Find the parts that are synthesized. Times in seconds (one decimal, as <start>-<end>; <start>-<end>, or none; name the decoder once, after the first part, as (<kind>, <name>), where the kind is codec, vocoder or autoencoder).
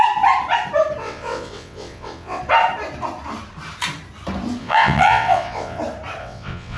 1.0-2.4 (vocoder, WaveNeXt); 4.6-5.8; 6.2-6.8